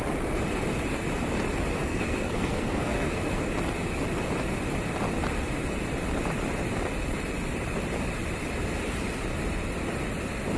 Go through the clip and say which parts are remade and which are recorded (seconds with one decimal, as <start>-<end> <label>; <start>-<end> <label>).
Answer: 0.0-1.8 recorded; 1.8-3.5 remade; 3.5-10.6 recorded